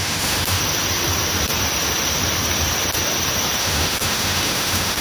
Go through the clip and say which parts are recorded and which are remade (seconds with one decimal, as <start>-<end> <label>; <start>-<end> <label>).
0.0-0.6 remade; 0.6-3.6 recorded; 3.6-5.0 remade

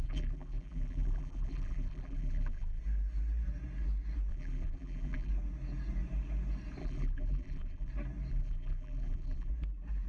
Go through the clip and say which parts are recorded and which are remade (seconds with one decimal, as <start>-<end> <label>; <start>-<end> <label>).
0.0-2.8 remade; 2.8-4.3 recorded; 4.3-5.3 remade; 5.3-6.8 recorded; 6.8-7.9 remade; 7.9-8.3 recorded; 8.3-9.5 remade; 9.5-10.1 recorded